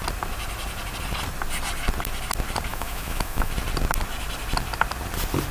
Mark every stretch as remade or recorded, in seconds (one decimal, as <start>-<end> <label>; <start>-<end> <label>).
0.0-2.7 recorded; 2.7-3.5 remade; 3.5-5.5 recorded